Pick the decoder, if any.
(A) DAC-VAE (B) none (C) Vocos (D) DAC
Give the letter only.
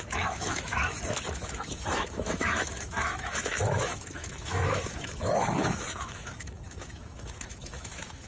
A